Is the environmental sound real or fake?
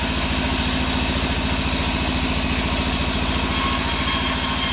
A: real